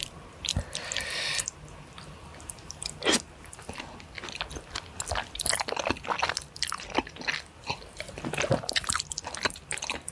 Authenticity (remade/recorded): recorded